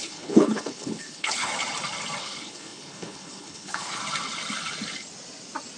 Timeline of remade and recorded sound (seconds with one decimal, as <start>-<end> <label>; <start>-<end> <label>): 0.0-1.5 remade; 1.5-2.2 recorded; 2.2-4.0 remade; 4.0-5.8 recorded